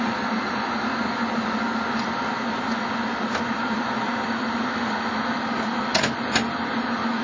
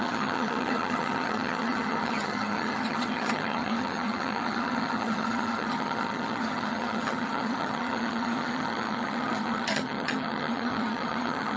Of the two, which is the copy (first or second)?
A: second